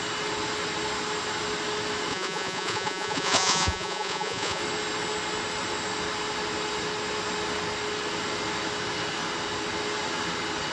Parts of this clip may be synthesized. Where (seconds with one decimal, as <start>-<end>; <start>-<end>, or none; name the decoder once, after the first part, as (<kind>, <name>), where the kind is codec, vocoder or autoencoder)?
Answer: 2.1-4.6 (vocoder, Vocos)